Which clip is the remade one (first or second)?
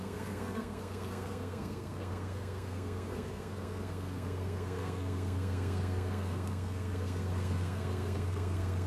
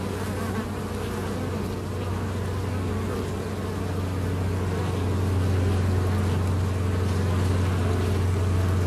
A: first